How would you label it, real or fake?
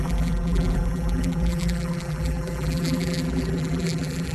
fake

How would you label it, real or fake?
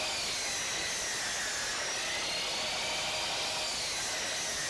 real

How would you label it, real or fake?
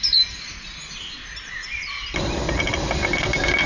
real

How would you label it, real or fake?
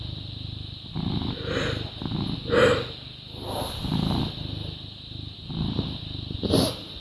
real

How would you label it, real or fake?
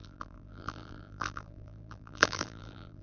fake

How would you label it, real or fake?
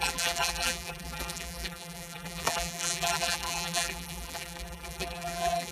fake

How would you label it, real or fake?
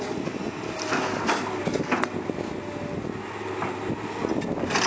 real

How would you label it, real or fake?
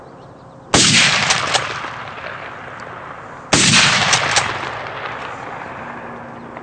real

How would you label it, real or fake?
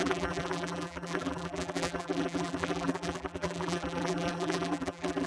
fake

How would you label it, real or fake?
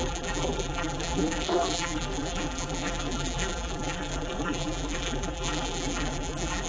fake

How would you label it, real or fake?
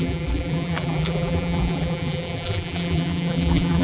fake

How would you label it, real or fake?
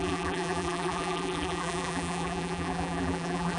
fake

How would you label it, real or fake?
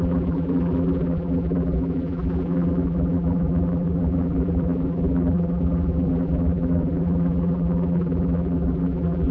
fake